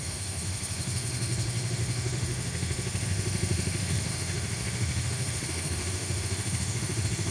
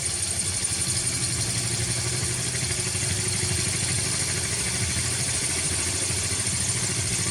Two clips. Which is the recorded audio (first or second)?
second